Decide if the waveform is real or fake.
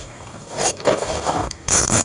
fake